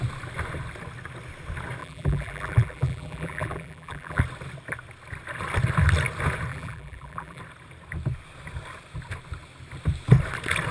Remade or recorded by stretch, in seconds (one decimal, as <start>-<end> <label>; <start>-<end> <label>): 0.0-1.8 recorded; 1.8-4.2 remade; 4.2-6.5 recorded; 6.5-7.4 remade; 7.4-10.7 recorded